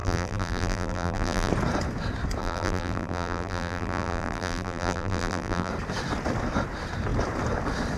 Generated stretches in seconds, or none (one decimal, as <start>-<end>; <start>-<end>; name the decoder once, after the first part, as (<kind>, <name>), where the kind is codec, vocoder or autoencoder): 0.0-1.5 (vocoder, BigVGAN v2); 2.4-5.7